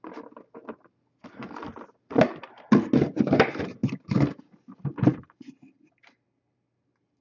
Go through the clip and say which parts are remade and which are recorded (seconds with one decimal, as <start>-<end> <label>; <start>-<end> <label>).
0.0-7.2 recorded